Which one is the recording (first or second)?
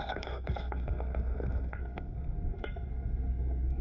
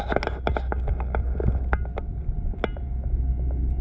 second